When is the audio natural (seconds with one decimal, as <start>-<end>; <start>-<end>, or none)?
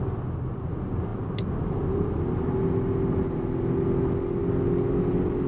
0.0-5.5